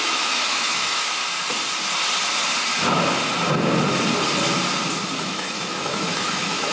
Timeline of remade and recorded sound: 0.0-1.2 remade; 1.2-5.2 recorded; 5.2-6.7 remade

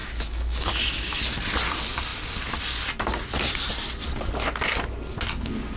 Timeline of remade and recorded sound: 0.0-1.2 remade; 1.2-5.8 recorded

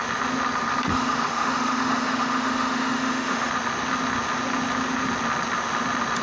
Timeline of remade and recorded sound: 0.0-0.9 recorded; 0.9-3.5 remade; 3.5-6.2 recorded

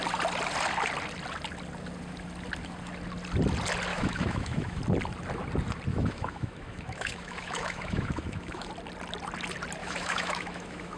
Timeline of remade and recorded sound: 0.0-3.9 recorded; 3.9-4.8 remade; 4.8-5.9 recorded; 5.9-8.7 remade; 8.7-9.8 recorded; 9.8-11.0 remade

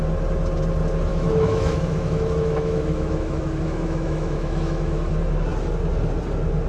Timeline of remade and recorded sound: 0.0-1.1 recorded; 1.1-5.1 remade; 5.1-6.7 recorded

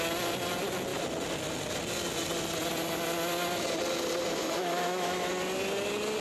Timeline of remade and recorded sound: 0.0-4.4 recorded; 4.4-5.3 remade; 5.3-6.2 recorded